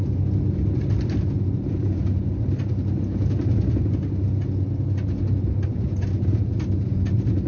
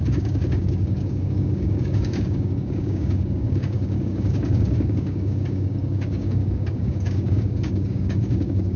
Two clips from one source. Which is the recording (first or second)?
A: first